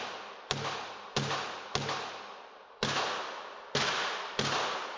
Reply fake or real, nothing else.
real